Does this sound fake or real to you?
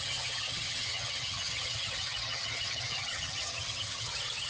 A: fake